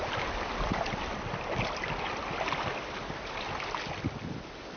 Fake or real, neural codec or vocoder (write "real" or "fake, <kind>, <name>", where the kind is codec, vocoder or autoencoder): real